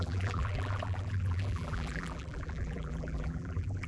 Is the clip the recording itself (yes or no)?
no